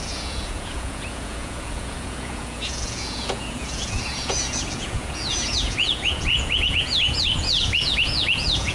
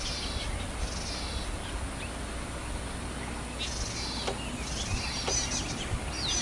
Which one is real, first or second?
second